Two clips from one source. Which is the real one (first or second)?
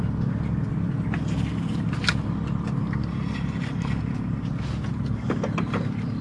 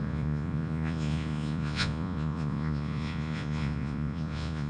first